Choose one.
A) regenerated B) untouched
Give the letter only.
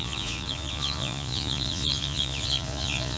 A